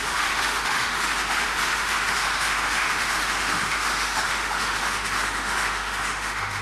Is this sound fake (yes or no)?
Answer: yes